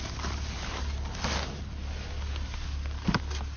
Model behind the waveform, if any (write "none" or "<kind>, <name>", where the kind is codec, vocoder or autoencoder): none